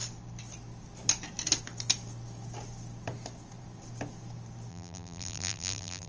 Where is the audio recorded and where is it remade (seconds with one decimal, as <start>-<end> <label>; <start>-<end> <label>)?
0.0-4.7 recorded; 4.7-6.1 remade